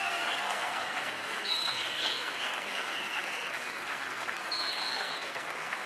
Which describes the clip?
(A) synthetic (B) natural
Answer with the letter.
A